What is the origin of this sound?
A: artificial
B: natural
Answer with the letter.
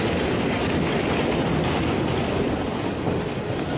B